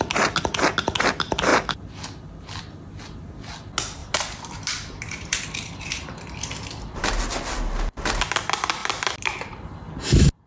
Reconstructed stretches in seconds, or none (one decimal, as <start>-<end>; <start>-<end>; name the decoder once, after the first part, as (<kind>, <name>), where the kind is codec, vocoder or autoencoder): 4.0-7.2 (vocoder, BigVGAN v2); 8.8-9.9